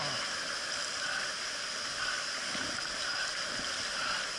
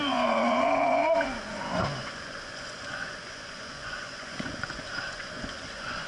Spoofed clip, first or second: second